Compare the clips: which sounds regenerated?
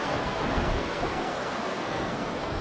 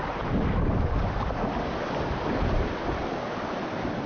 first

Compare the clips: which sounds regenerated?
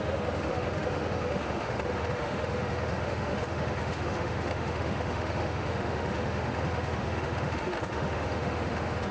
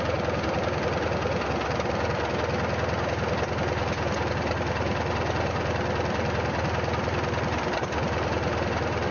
first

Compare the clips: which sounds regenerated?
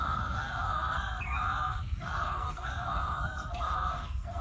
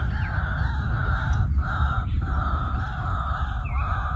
first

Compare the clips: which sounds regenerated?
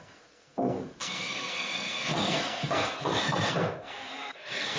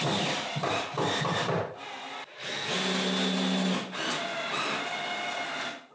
first